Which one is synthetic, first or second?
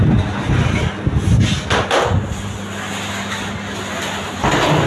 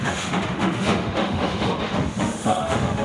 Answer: second